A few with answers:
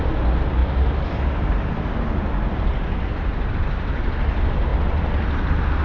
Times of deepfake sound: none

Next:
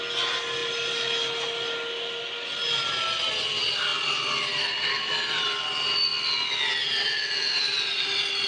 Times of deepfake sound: none

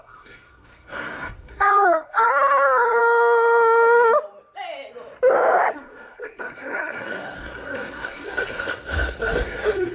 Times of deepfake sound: 0.0-3.0 (codec, SNAC); 5.7-9.9

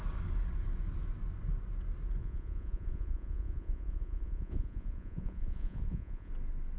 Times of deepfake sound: 2.2-6.3 (vocoder, Vocos)

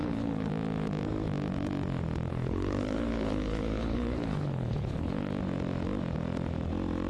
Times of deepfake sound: 0.0-0.5 (codec, HILCodec); 2.3-5.3